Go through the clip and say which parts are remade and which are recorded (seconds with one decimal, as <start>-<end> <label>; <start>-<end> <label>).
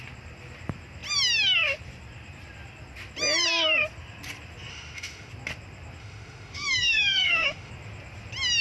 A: 0.0-4.7 recorded; 4.7-5.3 remade; 5.3-6.0 recorded; 6.0-7.7 remade; 7.7-8.6 recorded